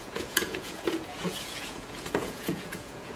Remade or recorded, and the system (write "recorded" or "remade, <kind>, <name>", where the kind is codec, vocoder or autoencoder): remade, vocoder, Vocos